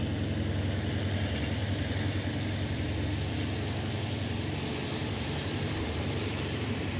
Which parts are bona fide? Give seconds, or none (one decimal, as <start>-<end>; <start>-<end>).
0.0-5.0